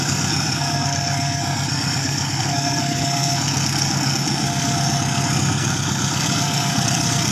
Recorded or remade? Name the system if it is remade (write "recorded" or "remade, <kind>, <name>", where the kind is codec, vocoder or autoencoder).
remade, codec, SNAC